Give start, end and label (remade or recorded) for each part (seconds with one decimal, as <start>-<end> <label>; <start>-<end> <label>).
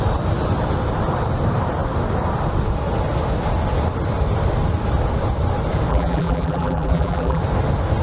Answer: 0.0-5.9 recorded; 5.9-7.4 remade; 7.4-8.0 recorded